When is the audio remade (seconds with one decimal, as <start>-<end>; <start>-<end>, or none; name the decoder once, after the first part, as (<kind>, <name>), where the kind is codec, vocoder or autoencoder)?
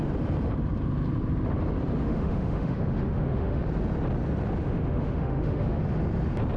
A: 2.0-3.6 (autoencoder, DAC-VAE); 4.6-5.8